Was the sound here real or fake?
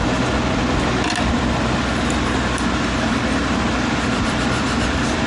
real